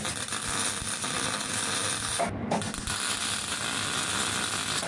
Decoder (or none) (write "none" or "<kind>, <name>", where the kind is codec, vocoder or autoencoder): none